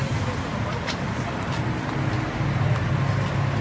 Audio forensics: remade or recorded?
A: recorded